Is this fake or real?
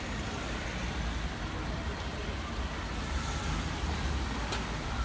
real